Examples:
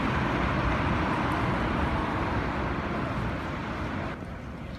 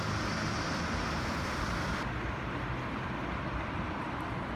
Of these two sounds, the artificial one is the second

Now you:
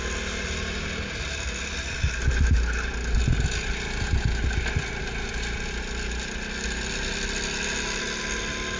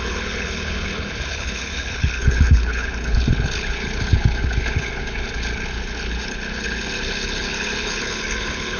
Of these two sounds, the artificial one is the second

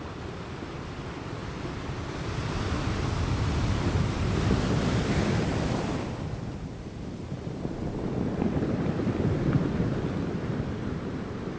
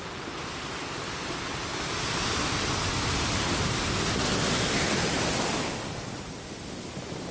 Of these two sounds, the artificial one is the first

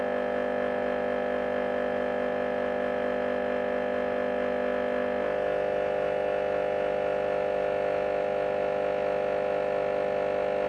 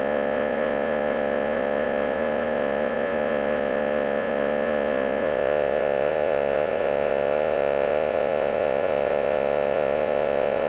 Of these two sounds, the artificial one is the second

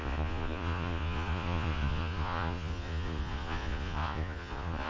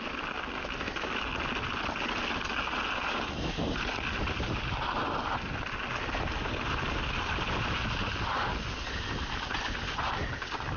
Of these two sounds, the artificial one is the first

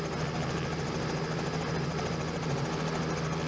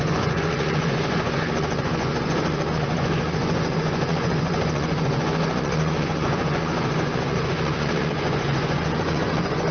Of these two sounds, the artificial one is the second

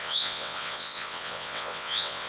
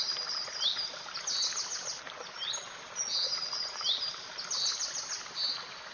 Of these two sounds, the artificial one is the first